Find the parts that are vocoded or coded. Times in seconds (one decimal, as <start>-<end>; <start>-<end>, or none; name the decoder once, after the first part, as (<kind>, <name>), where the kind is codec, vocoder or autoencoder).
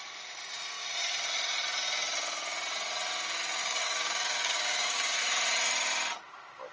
3.6-5.2 (codec, DAC)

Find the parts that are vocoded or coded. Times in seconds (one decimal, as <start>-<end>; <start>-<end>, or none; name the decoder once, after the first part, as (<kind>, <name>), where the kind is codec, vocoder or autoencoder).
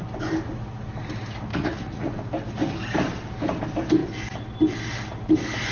1.5-2.1 (vocoder, Vocos)